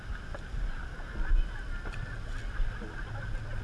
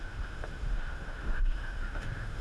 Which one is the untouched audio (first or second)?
first